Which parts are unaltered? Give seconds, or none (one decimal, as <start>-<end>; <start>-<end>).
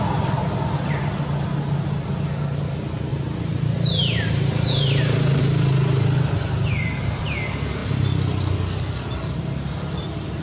0.0-3.1; 5.4-10.4